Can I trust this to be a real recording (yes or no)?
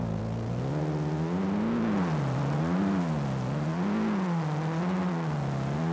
yes